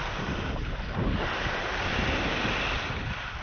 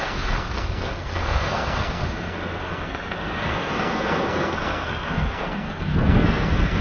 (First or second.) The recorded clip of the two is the first